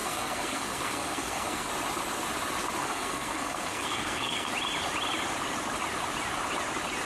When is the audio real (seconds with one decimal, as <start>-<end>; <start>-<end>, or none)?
1.7-2.8; 4.5-7.0